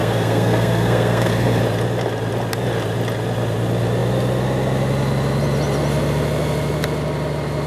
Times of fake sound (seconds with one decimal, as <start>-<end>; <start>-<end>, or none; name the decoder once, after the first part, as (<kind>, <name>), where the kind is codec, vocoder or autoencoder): 0.0-1.6 (codec, SNAC)